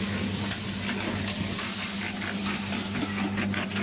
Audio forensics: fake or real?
real